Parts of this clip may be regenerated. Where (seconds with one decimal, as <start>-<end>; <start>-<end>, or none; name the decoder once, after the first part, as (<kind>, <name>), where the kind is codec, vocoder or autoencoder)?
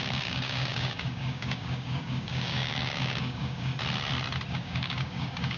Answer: 0.0-3.7 (codec, DAC); 4.5-5.6